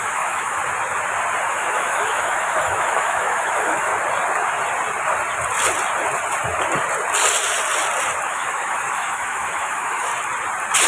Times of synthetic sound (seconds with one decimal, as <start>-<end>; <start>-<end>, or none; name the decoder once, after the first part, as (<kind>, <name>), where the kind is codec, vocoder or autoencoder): 0.0-0.6 (autoencoder, DAC-VAE); 1.5-3.9; 8.3-10.1